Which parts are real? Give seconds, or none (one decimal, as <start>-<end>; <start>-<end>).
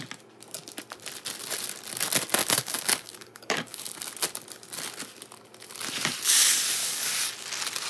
0.0-2.4; 3.9-6.8; 7.3-7.9